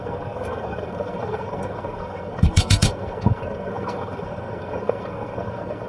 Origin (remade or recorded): remade